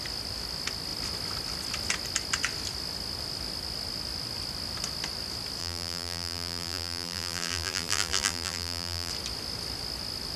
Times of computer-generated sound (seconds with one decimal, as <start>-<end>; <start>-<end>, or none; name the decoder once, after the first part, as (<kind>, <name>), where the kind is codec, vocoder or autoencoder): 5.6-9.1 (vocoder, BigVGAN v2)

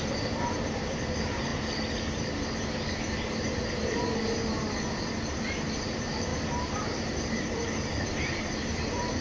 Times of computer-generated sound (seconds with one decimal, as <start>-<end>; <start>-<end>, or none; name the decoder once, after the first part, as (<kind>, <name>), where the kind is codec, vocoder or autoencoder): 0.0-1.5 (vocoder, BigVGAN v2); 3.1-6.3; 7.0-9.2

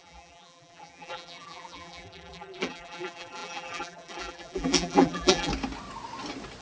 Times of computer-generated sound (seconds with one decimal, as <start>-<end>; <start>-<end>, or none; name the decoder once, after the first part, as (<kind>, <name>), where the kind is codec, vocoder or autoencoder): 0.0-5.5 (vocoder, BigVGAN v2)

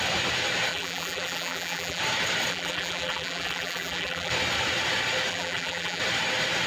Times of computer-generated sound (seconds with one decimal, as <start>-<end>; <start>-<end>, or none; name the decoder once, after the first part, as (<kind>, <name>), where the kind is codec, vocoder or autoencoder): 0.7-2.0 (vocoder, BigVGAN v2); 2.5-4.3; 5.3-6.0

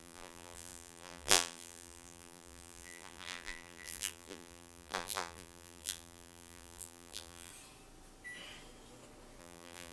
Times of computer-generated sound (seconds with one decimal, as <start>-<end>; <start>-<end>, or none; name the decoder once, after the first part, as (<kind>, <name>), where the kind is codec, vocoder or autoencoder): 0.0-7.5 (vocoder, BigVGAN v2); 9.4-9.9